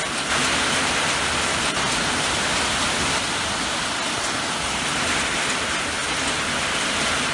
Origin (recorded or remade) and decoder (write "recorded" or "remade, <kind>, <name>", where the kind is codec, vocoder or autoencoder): recorded